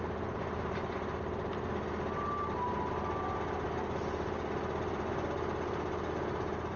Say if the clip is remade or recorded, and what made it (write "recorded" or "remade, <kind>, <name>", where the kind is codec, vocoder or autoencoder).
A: recorded